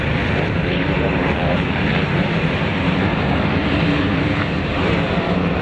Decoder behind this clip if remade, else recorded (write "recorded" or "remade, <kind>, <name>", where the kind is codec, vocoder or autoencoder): remade, vocoder, BigVGAN v2